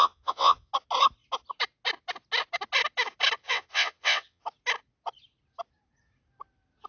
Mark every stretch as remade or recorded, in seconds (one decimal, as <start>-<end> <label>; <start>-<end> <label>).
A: 0.0-0.7 remade; 0.7-3.4 recorded; 3.4-4.4 remade; 4.4-6.9 recorded